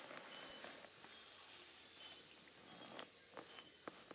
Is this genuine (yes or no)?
yes